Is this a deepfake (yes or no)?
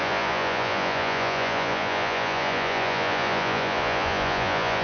yes